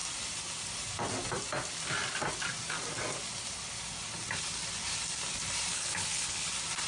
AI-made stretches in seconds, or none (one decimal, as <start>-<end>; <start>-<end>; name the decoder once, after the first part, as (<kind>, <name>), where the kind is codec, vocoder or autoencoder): 5.7-6.5 (codec, HILCodec)